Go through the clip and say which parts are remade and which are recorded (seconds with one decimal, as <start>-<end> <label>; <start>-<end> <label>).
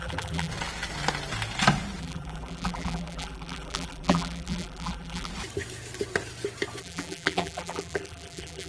0.0-0.5 remade; 0.5-2.0 recorded; 2.0-5.3 remade; 5.3-6.8 recorded; 6.8-8.7 remade